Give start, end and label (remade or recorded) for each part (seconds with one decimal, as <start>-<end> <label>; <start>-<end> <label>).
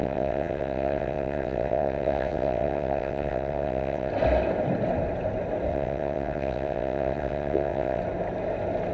0.0-4.1 remade; 4.1-5.7 recorded; 5.7-8.0 remade; 8.0-8.9 recorded